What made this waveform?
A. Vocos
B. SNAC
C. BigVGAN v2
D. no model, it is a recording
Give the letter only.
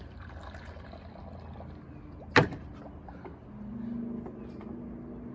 D